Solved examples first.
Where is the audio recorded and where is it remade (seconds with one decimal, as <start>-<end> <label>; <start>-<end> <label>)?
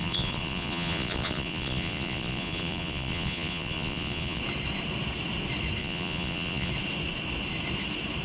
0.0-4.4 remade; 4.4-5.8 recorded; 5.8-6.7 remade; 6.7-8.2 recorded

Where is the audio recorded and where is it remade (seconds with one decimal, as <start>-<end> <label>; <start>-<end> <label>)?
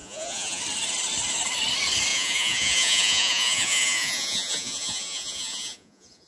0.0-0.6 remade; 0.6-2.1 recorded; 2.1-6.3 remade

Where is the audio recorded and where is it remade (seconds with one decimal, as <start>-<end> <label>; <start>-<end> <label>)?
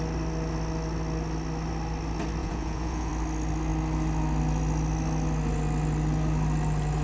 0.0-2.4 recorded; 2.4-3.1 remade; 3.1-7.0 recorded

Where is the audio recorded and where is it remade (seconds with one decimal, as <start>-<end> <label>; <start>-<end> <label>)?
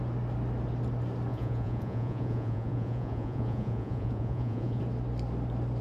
0.0-1.3 recorded; 1.3-4.8 remade; 4.8-5.8 recorded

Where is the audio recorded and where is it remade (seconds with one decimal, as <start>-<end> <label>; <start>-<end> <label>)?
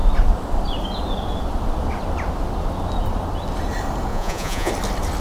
0.0-4.1 recorded; 4.1-4.7 remade; 4.7-5.2 recorded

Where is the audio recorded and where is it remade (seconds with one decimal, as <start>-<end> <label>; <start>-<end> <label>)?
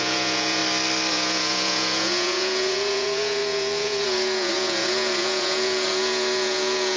0.0-0.6 remade; 0.6-1.1 recorded; 1.1-7.0 remade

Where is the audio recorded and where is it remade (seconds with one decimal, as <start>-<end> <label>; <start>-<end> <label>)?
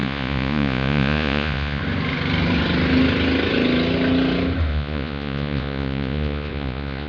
0.0-1.8 remade; 1.8-4.7 recorded; 4.7-7.1 remade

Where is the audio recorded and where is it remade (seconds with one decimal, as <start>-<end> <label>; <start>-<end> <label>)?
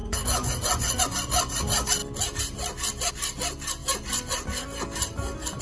0.0-1.0 remade; 1.0-5.6 recorded